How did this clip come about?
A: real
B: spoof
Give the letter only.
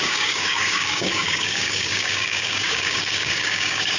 B